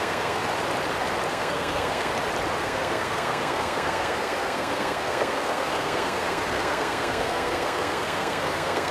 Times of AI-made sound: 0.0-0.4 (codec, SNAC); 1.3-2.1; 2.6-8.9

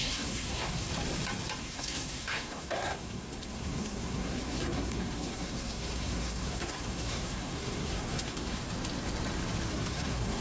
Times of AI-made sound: 0.0-0.9 (codec, SNAC); 1.6-8.6; 9.7-10.4

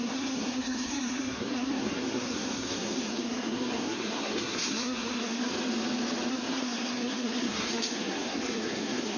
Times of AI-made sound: 0.0-5.5 (codec, SNAC); 6.3-9.2

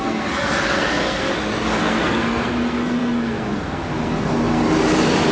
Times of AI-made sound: 0.0-1.3 (codec, SNAC); 1.8-4.6

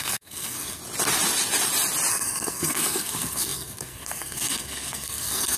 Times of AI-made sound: 0.0-0.8 (codec, SNAC); 2.1-5.6

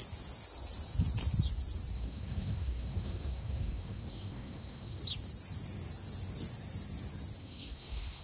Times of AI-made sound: 1.9-5.0 (codec, SNAC); 7.4-8.2